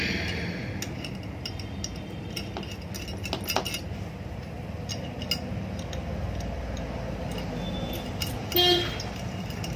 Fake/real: real